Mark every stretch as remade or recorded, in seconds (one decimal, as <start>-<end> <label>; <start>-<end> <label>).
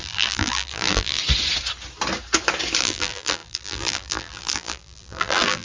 0.0-1.2 remade; 1.2-2.8 recorded; 2.8-5.6 remade